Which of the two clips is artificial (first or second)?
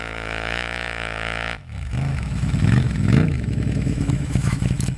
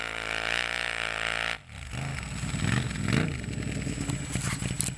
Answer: first